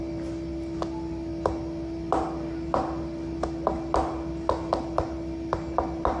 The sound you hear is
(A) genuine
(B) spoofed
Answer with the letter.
A